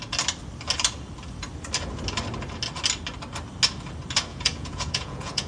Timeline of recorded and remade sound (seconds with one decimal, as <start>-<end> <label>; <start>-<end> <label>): 0.0-4.3 recorded; 4.3-5.5 remade